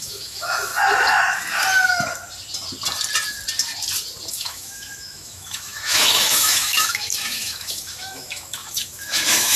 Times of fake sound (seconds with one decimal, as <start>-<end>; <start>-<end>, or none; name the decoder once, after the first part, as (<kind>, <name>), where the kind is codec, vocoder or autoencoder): 0.0-0.7 (autoencoder, DAC-VAE); 4.3-9.6